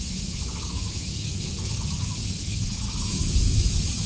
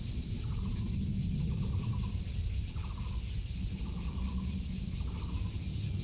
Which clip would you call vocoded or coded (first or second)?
first